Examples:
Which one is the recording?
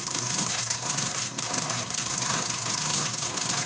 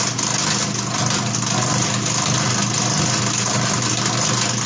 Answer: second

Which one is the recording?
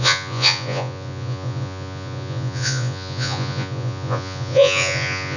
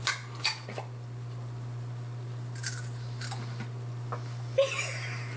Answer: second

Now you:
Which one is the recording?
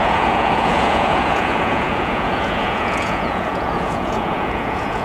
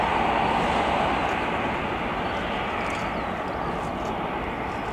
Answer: second